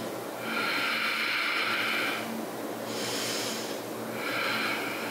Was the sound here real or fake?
real